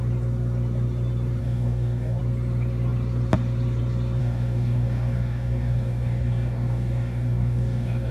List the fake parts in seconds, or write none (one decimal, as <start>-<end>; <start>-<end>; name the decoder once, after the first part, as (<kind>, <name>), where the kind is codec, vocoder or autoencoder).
1.4-2.2 (codec, DAC); 4.2-8.1